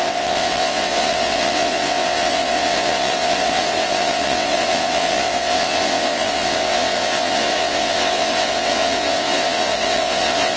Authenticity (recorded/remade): remade